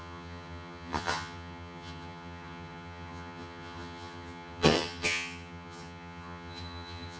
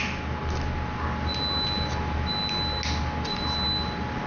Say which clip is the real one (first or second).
second